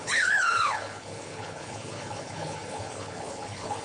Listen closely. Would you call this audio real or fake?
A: fake